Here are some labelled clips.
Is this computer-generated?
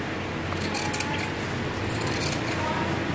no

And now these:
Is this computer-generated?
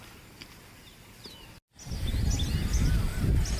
no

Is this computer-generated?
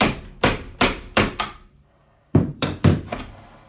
yes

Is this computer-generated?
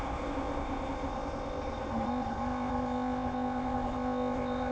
yes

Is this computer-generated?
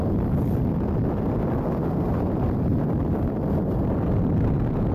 no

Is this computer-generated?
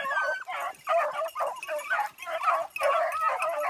no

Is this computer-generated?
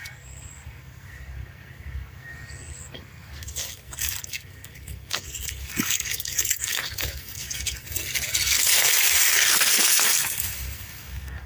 yes